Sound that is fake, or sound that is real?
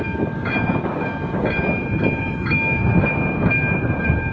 fake